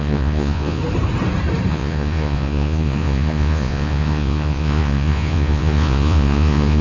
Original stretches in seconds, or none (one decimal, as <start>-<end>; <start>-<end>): 0.8-1.7